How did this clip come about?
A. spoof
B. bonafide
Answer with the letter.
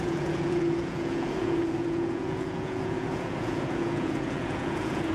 A